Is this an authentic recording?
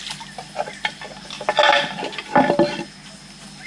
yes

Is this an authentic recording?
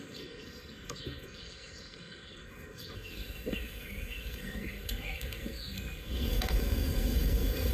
no